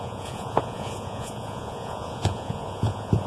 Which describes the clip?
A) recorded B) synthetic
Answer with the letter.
B